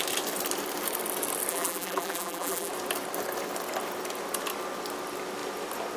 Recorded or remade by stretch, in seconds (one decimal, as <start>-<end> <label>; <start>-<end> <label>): 0.0-1.5 recorded; 1.5-2.7 remade; 2.7-6.0 recorded